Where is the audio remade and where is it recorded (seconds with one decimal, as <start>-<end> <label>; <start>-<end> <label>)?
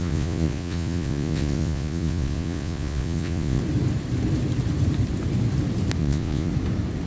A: 0.0-3.6 remade; 3.6-6.0 recorded; 6.0-6.5 remade; 6.5-7.1 recorded